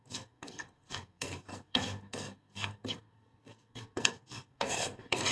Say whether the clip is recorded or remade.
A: remade